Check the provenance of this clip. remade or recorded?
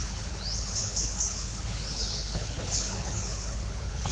remade